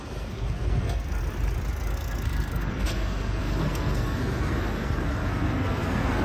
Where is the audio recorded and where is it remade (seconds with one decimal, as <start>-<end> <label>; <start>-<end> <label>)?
0.0-1.2 remade; 1.2-1.7 recorded; 1.7-6.2 remade